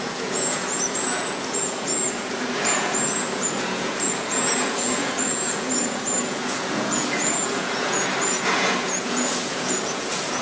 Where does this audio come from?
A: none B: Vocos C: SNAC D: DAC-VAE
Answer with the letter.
B